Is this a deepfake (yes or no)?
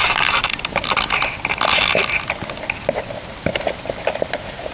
no